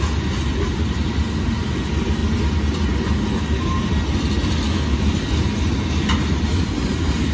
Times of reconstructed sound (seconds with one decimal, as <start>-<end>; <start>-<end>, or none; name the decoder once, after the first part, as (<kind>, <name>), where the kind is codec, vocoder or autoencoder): none